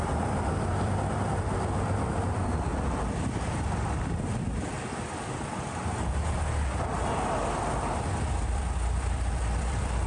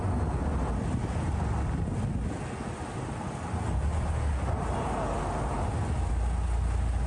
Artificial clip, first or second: first